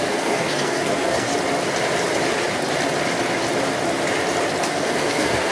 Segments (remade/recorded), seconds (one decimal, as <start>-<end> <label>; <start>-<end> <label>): 0.0-1.3 remade; 1.3-4.6 recorded; 4.6-5.5 remade